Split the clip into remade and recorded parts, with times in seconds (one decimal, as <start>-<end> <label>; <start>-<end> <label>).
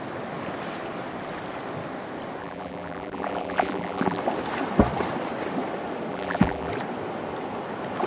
0.0-2.4 recorded; 2.4-4.2 remade; 4.2-6.1 recorded; 6.1-6.7 remade; 6.7-8.1 recorded